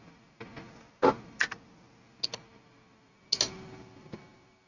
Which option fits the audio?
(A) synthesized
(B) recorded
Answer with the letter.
B